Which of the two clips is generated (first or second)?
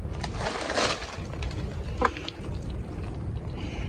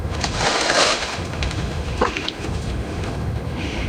second